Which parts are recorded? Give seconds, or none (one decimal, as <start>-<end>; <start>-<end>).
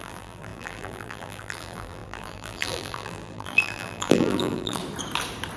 4.8-5.6